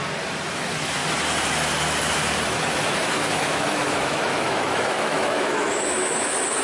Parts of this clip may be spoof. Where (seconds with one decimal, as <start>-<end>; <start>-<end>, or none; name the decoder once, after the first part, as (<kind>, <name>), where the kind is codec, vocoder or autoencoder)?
0.5-1.0 (autoencoder, DAC-VAE); 2.5-6.6